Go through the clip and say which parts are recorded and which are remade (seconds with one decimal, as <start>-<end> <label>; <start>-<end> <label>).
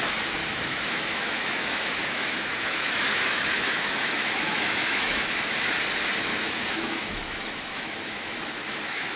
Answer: 0.0-0.4 recorded; 0.4-5.3 remade; 5.3-6.3 recorded; 6.3-9.2 remade